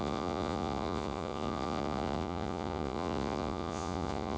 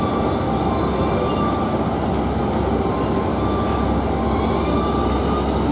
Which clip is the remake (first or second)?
first